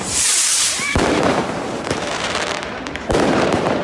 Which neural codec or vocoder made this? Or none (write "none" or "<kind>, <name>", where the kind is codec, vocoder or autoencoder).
vocoder, BigVGAN v2